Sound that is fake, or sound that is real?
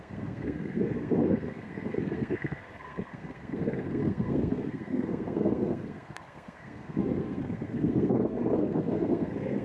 fake